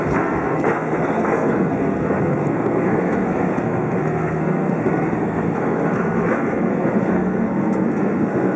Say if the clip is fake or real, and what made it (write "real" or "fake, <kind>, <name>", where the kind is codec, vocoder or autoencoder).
fake, codec, SNAC